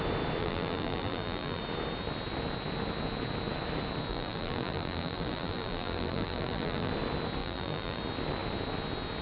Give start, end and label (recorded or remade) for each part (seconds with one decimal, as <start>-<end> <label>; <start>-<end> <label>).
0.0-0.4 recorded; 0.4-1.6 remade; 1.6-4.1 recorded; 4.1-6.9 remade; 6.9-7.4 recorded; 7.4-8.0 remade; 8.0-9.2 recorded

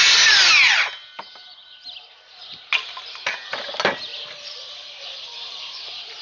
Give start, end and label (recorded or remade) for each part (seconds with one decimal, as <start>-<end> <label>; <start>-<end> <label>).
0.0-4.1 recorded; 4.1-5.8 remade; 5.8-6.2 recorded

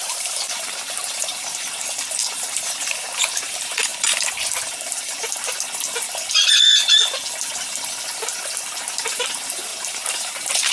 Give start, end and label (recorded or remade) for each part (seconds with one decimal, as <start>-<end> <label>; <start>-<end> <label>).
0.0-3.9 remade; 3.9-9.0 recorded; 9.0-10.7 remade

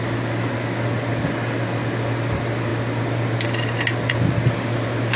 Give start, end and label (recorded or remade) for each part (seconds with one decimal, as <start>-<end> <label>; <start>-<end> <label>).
0.0-5.2 recorded

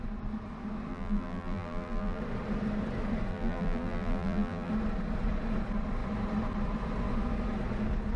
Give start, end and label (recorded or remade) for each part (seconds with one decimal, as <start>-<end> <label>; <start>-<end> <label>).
0.0-0.9 recorded; 0.9-2.2 remade; 2.2-3.3 recorded; 3.3-4.7 remade; 4.7-8.2 recorded